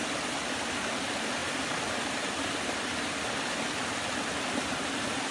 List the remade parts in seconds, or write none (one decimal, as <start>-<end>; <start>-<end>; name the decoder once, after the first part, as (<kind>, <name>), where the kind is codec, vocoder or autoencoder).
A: none